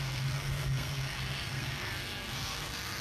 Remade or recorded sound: remade